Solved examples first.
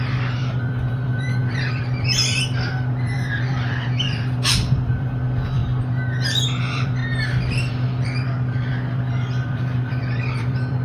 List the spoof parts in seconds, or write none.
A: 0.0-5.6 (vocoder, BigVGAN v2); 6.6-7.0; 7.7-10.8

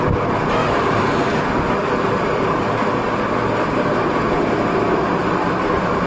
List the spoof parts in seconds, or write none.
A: 0.6-4.3 (vocoder, BigVGAN v2); 5.2-6.1

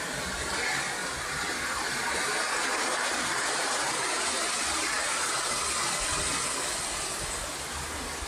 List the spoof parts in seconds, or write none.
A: none